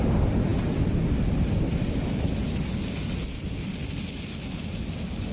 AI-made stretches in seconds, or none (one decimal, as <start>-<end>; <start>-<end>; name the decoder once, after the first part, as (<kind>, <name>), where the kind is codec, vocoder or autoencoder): none